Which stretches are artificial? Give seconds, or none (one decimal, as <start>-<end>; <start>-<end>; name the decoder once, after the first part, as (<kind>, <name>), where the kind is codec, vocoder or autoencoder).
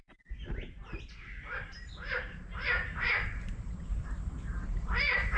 0.0-5.4 (vocoder, BigVGAN v2)